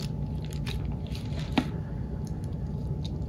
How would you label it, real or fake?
fake